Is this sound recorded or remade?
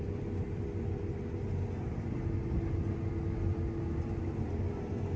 recorded